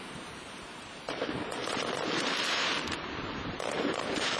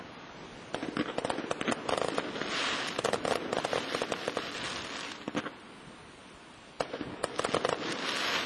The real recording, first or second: second